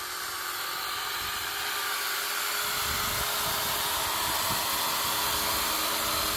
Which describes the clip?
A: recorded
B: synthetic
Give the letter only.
A